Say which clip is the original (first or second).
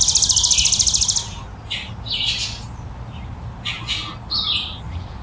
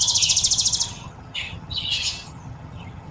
first